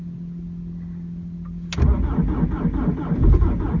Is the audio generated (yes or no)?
no